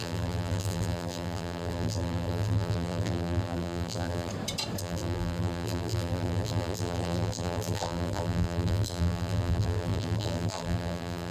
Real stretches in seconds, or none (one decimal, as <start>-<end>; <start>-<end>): 4.3-4.8